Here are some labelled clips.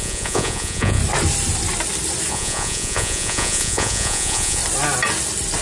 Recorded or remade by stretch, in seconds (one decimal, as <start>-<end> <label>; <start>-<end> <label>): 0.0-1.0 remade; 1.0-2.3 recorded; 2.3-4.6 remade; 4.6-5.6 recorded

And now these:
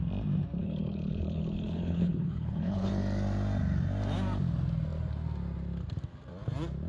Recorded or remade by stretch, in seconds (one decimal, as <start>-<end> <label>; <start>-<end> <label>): 0.0-0.6 recorded; 0.6-2.9 remade; 2.9-6.9 recorded

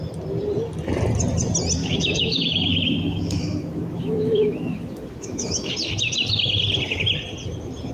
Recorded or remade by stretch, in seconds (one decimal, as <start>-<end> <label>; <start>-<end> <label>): 0.0-1.8 recorded; 1.8-5.7 remade; 5.7-7.9 recorded

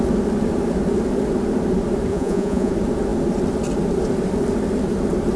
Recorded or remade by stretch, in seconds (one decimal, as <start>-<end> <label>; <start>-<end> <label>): 0.0-2.1 recorded; 2.1-2.7 remade; 2.7-5.4 recorded

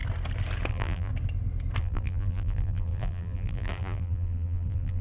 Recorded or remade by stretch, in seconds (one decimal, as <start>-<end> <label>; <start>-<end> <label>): 0.0-0.7 recorded; 0.7-1.1 remade; 1.1-1.8 recorded; 1.8-5.0 remade

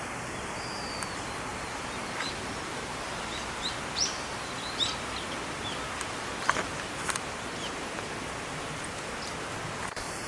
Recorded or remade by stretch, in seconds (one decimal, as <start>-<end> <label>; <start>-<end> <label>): 0.0-10.3 recorded

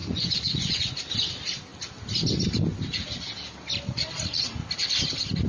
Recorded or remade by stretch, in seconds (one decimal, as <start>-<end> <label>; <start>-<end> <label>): 0.0-1.0 remade; 1.0-5.5 recorded